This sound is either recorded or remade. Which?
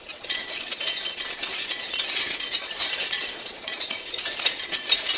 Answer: remade